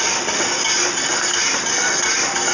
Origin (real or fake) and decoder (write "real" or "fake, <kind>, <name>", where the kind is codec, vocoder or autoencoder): real